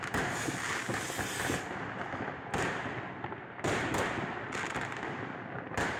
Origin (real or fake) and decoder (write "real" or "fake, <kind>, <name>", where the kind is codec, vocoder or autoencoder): real